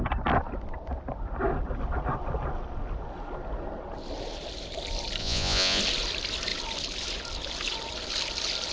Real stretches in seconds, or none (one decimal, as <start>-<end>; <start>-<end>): 0.0-5.2; 5.8-8.7